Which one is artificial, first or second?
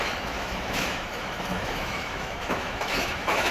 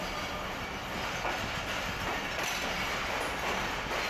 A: first